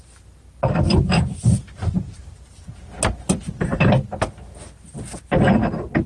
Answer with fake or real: real